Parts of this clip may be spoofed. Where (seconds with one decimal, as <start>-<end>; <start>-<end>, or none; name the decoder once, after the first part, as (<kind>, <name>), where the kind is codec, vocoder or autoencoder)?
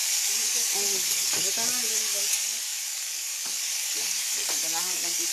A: 0.0-5.3 (codec, DAC)